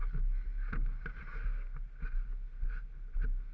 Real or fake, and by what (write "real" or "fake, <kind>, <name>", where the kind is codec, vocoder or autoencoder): real